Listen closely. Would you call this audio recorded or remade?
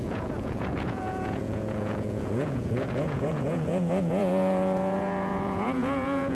remade